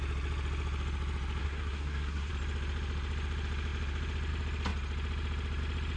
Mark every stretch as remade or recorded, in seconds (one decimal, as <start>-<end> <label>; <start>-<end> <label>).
0.0-1.4 recorded; 1.4-2.3 remade; 2.3-6.0 recorded